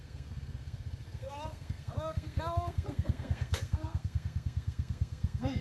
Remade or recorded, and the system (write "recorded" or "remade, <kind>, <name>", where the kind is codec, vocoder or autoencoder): remade, codec, SNAC